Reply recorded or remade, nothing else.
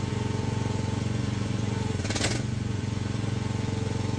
remade